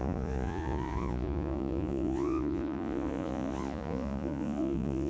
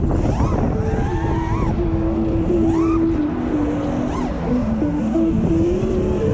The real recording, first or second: second